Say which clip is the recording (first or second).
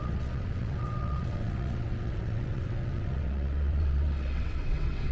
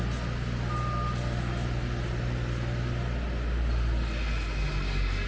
second